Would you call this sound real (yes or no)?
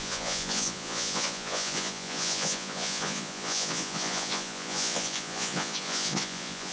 no